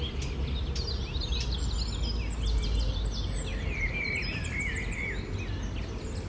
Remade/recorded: recorded